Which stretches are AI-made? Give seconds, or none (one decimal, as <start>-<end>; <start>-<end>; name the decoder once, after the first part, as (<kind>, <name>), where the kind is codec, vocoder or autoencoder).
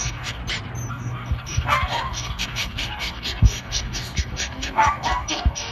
0.0-0.4 (codec, DAC); 0.9-5.7